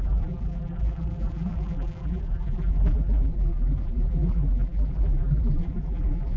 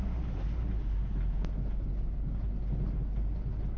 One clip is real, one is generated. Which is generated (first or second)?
first